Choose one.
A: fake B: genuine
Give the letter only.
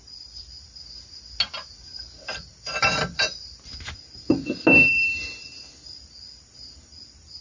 B